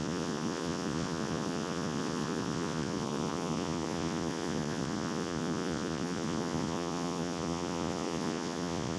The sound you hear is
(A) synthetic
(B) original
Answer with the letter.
A